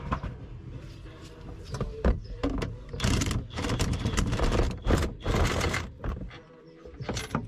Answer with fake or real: real